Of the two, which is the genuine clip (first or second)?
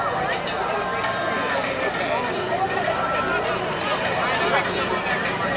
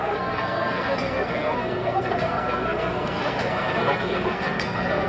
first